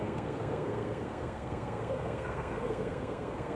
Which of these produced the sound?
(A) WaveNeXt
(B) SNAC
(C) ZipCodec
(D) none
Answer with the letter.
B